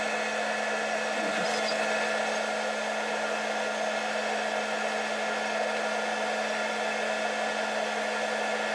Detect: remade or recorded recorded